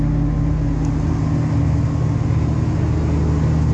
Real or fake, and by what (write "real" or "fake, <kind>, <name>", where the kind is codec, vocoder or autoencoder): real